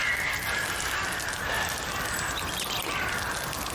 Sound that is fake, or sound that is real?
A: real